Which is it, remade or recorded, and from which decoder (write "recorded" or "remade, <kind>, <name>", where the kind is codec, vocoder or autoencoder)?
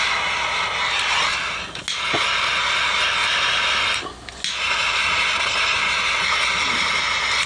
recorded